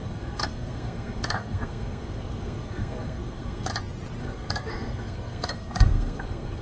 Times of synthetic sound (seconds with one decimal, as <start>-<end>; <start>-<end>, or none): 0.0-3.7; 4.2-6.6